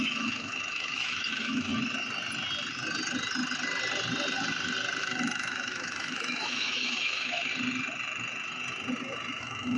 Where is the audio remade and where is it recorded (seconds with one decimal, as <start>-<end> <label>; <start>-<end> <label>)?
0.0-1.7 remade; 1.7-5.0 recorded; 5.0-7.5 remade; 7.5-9.4 recorded; 9.4-9.8 remade